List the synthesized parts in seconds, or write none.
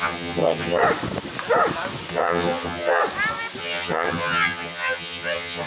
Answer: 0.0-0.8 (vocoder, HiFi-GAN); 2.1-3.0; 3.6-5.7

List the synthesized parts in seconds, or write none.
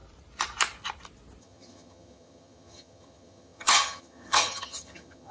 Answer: 1.4-5.3 (vocoder, HiFi-GAN)